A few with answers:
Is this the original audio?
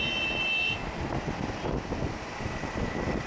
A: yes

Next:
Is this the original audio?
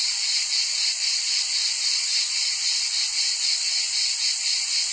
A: yes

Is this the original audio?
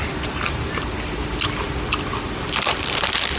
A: yes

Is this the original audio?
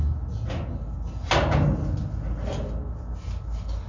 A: yes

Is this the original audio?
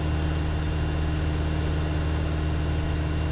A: yes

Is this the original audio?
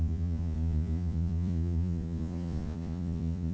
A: no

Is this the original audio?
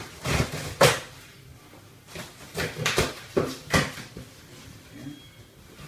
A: yes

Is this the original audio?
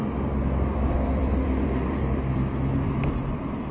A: no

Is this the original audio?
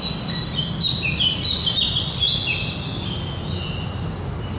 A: yes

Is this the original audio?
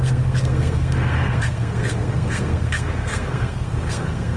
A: no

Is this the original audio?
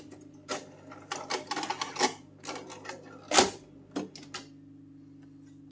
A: yes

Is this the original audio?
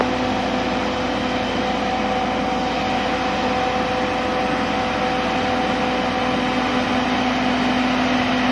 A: yes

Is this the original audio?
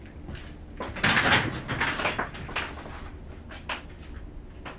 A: yes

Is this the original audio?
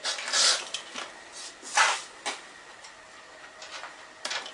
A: yes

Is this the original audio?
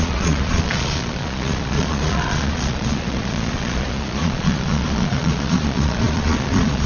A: no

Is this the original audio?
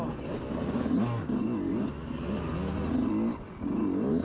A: yes